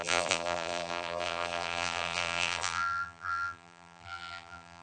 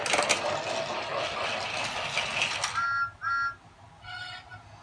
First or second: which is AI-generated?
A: first